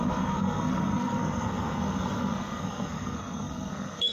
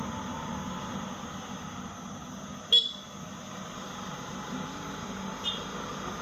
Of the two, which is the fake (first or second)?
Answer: first